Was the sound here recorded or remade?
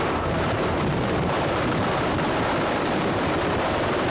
remade